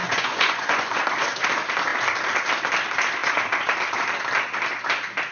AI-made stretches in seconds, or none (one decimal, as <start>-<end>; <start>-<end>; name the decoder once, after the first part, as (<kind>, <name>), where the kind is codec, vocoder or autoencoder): 0.0-1.0 (vocoder, Vocos)

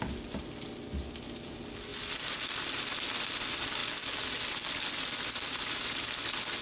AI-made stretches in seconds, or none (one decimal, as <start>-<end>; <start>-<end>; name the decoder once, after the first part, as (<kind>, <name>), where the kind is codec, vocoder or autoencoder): none